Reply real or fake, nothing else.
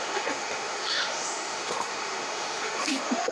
fake